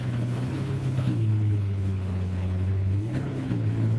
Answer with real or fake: fake